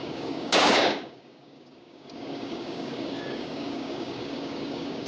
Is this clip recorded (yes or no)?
no